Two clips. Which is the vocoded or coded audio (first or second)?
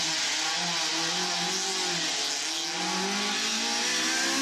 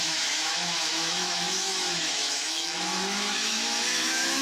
second